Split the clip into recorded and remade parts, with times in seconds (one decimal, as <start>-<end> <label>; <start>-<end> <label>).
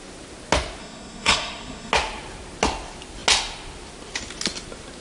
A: 0.0-0.8 recorded; 0.8-1.9 remade; 1.9-5.0 recorded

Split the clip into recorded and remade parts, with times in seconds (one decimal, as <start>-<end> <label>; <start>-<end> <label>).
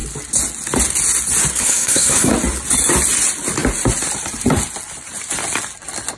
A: 0.0-1.6 recorded; 1.6-2.3 remade; 2.3-6.2 recorded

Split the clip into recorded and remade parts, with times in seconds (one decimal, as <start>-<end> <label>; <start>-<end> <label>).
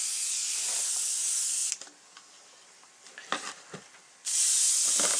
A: 0.0-5.2 recorded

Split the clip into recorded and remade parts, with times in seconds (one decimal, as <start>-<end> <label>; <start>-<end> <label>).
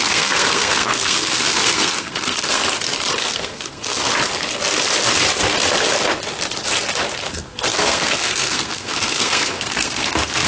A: 0.0-2.6 remade; 2.6-3.1 recorded; 3.1-4.0 remade; 4.0-7.3 recorded; 7.3-10.5 remade